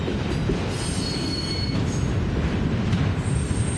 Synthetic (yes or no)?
no